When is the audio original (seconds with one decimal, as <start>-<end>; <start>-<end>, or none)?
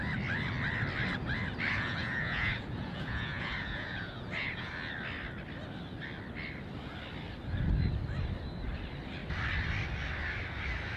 0.0-1.7; 4.7-11.0